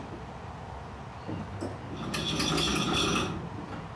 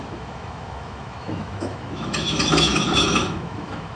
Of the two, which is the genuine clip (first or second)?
first